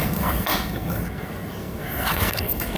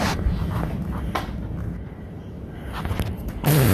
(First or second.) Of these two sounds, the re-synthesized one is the first